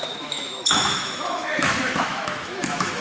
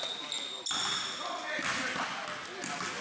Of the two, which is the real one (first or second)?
second